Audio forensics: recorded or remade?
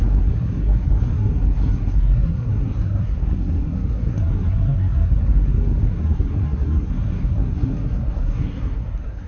remade